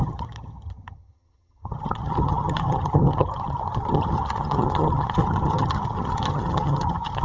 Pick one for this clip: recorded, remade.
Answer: remade